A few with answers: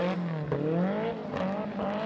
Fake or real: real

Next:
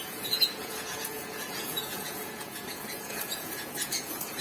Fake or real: fake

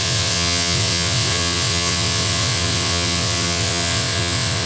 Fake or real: fake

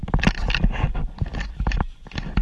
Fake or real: real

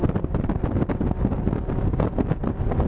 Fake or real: real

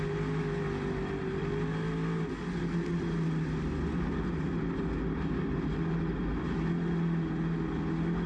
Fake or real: real